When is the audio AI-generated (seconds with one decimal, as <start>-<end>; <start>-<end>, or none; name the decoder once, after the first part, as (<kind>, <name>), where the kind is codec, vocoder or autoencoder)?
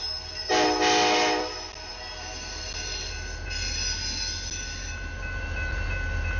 none